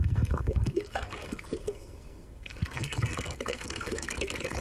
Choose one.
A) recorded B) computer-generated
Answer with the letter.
B